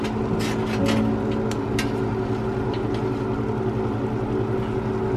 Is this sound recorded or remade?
recorded